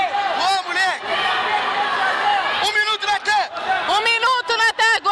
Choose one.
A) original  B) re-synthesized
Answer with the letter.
A